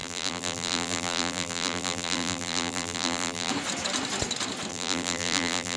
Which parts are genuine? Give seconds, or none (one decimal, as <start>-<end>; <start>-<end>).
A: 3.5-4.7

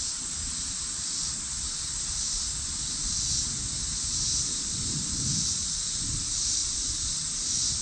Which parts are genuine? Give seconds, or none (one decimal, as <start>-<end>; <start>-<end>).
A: 0.0-1.3; 5.5-6.6

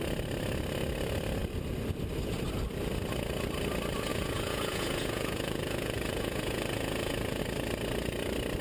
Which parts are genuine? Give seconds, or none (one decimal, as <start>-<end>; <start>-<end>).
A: 0.0-4.1; 7.4-8.6

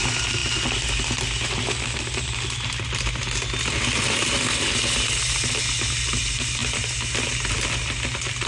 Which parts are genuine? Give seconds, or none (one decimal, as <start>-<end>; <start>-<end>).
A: 0.0-8.5